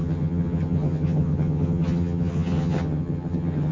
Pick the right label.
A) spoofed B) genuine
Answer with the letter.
A